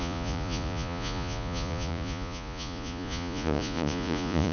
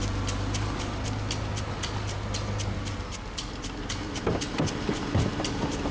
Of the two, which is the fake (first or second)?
first